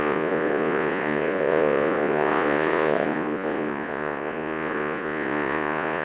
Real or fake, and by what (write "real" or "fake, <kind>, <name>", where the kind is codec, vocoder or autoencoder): fake, vocoder, Vocos